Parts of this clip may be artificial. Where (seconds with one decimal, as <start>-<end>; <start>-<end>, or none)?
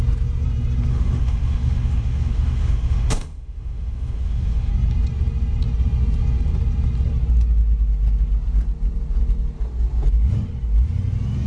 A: 0.9-4.7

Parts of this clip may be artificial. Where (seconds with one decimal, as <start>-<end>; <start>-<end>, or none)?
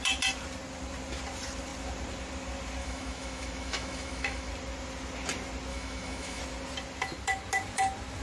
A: 2.8-4.5; 5.7-6.4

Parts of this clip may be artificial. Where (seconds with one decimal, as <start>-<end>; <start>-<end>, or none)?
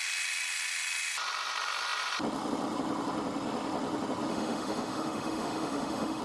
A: 4.3-6.2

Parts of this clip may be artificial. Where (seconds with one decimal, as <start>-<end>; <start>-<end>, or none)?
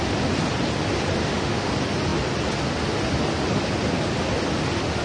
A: 1.2-1.7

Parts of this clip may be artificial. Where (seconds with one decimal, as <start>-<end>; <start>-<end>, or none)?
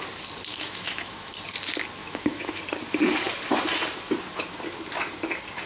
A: 0.5-1.3; 2.0-2.6